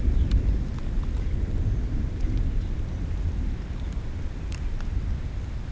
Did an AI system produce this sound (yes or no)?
no